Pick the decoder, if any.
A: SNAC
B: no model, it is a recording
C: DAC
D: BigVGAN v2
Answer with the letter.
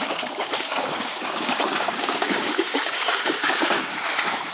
C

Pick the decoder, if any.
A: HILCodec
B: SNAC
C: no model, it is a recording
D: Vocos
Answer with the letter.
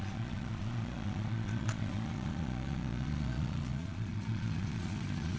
D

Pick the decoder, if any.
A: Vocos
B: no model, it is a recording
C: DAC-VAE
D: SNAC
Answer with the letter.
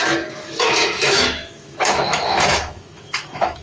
C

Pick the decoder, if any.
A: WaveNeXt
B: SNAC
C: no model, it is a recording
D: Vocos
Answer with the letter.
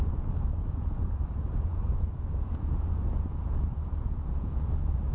D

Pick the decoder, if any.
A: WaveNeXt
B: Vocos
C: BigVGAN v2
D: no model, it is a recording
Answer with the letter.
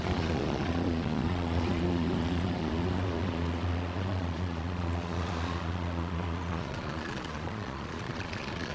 B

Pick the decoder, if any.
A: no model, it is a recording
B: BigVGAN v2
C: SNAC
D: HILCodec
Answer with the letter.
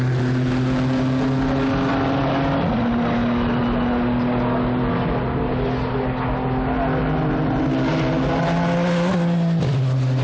A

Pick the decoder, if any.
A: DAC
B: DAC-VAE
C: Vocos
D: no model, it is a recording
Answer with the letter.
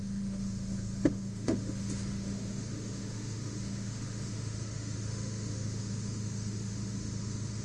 B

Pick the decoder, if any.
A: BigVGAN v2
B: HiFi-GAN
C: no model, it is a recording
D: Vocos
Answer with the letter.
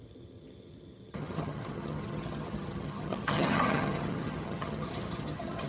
B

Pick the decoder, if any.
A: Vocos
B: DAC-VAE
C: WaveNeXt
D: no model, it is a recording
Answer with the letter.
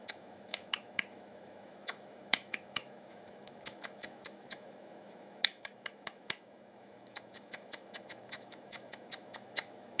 B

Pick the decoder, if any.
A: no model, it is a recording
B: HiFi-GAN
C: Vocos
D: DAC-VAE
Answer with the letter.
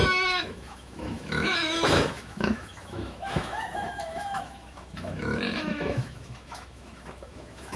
D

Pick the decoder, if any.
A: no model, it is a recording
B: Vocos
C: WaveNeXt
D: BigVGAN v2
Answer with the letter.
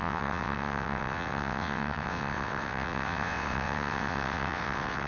C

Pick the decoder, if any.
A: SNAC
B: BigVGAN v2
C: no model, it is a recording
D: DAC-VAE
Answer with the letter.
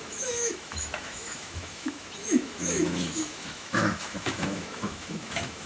D